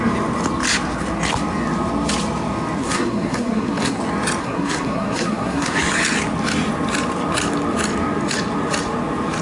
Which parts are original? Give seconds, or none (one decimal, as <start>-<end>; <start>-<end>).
0.0-2.8; 4.0-4.4; 5.8-9.4